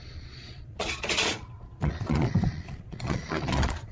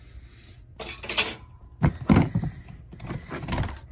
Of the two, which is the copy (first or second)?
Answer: first